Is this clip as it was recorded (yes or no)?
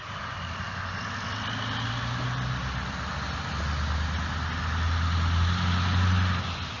yes